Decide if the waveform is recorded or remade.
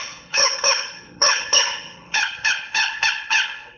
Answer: remade